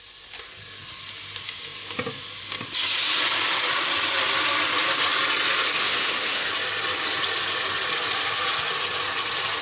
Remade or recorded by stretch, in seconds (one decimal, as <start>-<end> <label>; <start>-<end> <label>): 0.0-5.8 recorded; 5.8-6.5 remade; 6.5-9.6 recorded